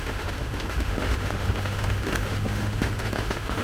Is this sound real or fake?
fake